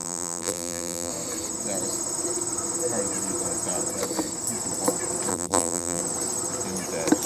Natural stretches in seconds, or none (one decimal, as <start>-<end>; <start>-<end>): 1.1-5.3; 6.0-7.3